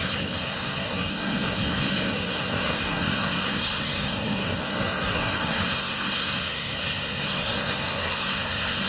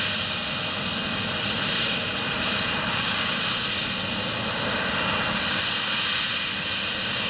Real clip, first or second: second